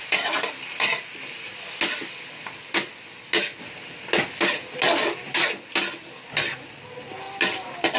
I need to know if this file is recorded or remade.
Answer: recorded